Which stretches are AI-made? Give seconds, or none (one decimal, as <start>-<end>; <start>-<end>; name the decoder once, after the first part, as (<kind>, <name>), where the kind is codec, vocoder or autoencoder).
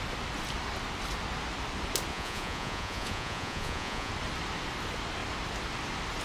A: 2.1-4.1 (vocoder, Vocos)